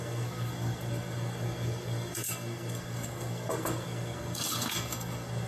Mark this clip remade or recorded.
remade